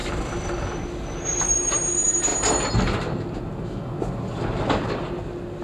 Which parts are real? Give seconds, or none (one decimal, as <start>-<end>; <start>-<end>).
0.0-5.6